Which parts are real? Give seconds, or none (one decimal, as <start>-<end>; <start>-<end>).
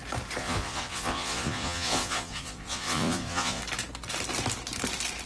0.0-0.4; 3.6-5.3